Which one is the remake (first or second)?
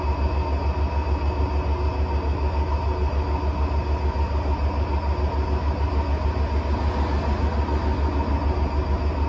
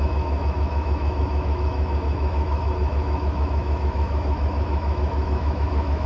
second